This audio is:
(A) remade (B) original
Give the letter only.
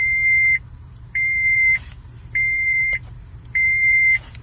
A